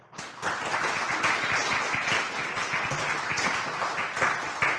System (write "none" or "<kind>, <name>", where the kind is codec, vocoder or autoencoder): none